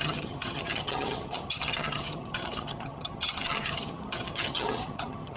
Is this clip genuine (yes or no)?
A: no